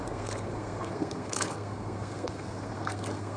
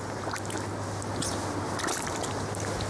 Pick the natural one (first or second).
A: second